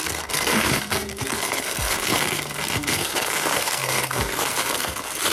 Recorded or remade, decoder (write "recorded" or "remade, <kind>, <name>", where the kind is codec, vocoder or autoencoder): remade, codec, SNAC